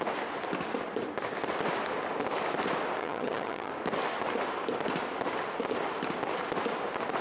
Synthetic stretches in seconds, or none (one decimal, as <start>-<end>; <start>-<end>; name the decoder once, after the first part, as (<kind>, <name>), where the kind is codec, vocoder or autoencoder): 3.0-3.7 (vocoder, HiFi-GAN)